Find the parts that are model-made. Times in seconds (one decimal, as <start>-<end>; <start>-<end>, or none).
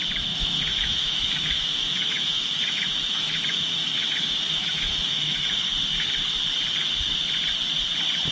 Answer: 0.7-5.7